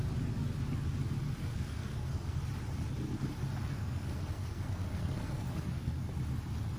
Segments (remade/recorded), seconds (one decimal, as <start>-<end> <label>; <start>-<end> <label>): 0.0-1.4 recorded; 1.4-2.4 remade; 2.4-3.7 recorded; 3.7-6.1 remade; 6.1-6.8 recorded